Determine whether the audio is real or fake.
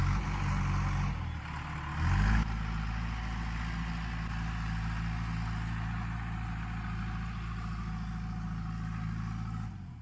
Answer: real